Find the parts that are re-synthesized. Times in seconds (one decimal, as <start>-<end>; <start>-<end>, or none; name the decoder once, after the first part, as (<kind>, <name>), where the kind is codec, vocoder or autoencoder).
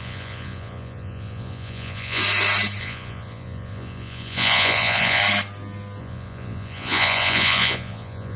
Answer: 0.0-2.2 (vocoder, Vocos); 2.8-5.2; 6.0-8.4